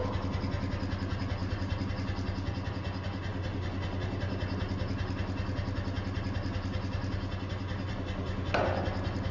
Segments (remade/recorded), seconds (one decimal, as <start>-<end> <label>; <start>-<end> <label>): 0.0-1.4 recorded; 1.4-1.9 remade; 1.9-9.3 recorded

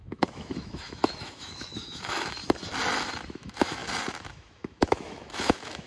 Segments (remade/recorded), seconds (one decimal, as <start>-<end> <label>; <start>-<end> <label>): 0.0-2.4 remade; 2.4-3.3 recorded; 3.3-3.8 remade; 3.8-4.3 recorded; 4.3-5.9 remade